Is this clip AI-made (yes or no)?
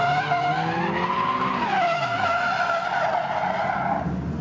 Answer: no